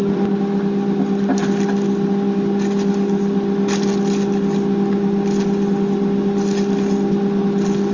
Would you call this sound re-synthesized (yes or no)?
no